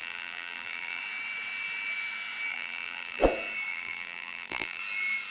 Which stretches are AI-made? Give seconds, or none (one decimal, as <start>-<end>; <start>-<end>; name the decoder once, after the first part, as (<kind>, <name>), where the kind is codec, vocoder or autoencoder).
0.0-1.0 (vocoder, BigVGAN v2); 2.5-3.2; 3.7-4.8